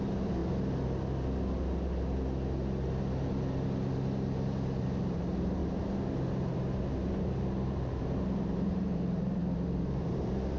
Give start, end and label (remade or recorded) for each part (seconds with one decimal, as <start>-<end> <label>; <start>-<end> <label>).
0.0-0.4 remade; 0.4-4.8 recorded; 4.8-5.6 remade; 5.6-6.5 recorded; 6.5-10.6 remade